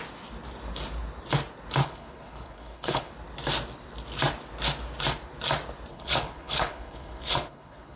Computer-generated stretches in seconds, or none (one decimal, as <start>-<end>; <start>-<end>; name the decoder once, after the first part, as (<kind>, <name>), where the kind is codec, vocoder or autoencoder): 1.8-3.1 (codec, HILCodec); 5.9-8.0